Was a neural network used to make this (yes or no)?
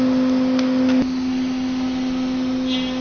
no